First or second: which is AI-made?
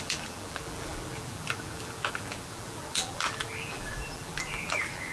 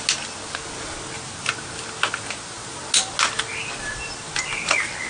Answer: first